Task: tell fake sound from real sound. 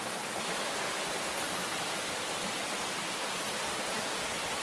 real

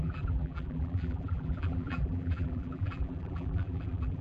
fake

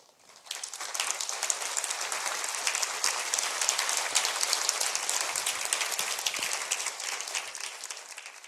real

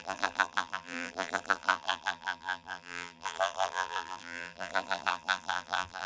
fake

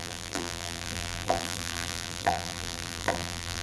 fake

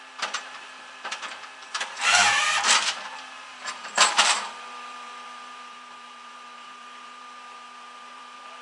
fake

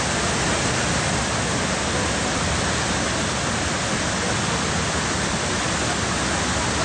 real